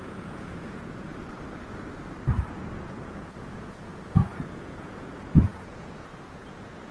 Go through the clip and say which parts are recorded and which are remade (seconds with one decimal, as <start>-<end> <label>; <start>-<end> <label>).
0.0-1.1 remade; 1.1-2.6 recorded; 2.6-6.9 remade